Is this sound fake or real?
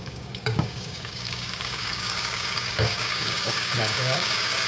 fake